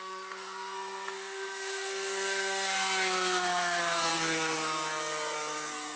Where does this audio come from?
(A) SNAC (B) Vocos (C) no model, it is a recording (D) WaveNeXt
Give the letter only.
A